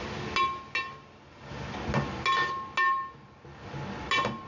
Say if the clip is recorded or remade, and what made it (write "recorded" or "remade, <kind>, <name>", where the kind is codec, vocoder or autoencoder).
recorded